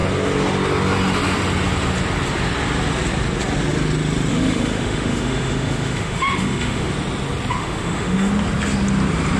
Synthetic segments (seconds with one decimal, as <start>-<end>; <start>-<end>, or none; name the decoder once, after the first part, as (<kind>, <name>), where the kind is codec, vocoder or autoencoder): 4.3-6.9 (autoencoder, DAC-VAE); 7.6-8.3